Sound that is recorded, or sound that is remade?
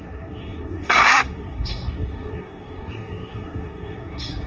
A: remade